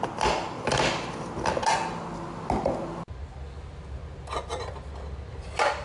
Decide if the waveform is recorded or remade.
recorded